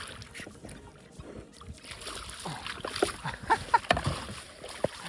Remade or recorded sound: recorded